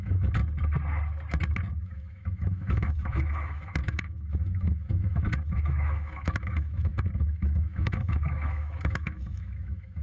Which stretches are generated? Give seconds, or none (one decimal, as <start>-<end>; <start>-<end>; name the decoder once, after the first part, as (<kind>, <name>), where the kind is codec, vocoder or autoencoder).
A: 0.0-0.4 (autoencoder, DAC-VAE); 1.7-10.0